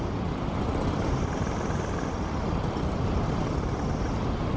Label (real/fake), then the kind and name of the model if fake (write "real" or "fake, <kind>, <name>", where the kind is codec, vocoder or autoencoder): real